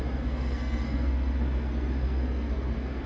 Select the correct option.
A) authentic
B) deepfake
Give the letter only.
B